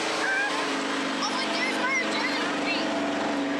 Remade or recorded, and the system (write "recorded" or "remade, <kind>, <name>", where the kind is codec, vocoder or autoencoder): recorded